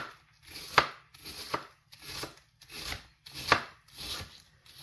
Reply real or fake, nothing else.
real